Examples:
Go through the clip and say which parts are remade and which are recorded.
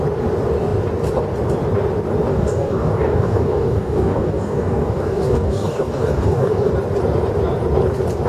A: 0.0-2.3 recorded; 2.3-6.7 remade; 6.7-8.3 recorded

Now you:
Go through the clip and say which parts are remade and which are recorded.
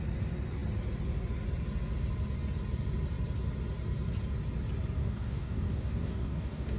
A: 0.0-5.0 recorded; 5.0-6.8 remade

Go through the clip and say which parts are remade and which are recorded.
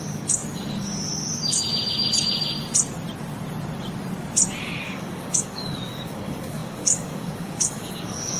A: 0.0-0.4 remade; 0.4-4.6 recorded; 4.6-8.4 remade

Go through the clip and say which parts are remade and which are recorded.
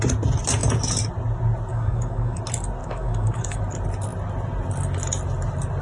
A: 0.0-1.7 recorded; 1.7-2.4 remade; 2.4-2.8 recorded; 2.8-3.6 remade; 3.6-5.8 recorded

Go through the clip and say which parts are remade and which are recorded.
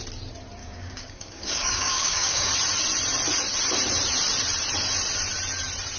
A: 0.0-0.6 recorded; 0.6-2.5 remade; 2.5-6.0 recorded